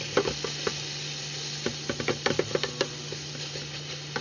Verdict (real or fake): real